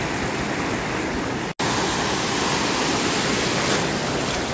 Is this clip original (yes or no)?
yes